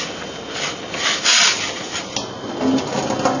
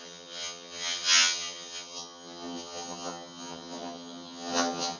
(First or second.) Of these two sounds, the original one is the first